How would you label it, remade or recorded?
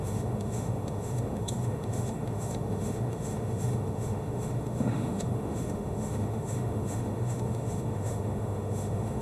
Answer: remade